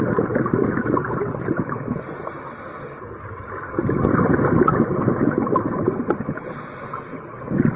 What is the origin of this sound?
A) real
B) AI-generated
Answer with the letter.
A